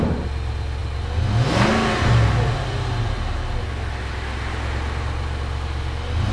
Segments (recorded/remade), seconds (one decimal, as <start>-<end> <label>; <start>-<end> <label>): 0.0-6.3 recorded